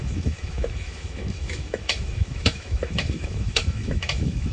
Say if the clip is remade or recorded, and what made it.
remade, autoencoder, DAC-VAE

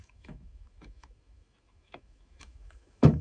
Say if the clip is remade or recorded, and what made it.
remade, autoencoder, DAC-VAE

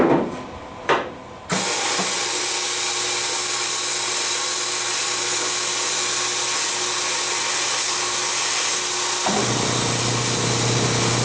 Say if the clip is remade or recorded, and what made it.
recorded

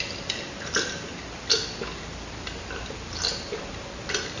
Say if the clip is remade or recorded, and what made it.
recorded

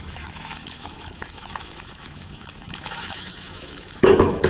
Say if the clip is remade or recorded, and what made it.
remade, autoencoder, DAC-VAE